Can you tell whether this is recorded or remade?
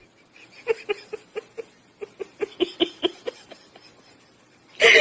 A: recorded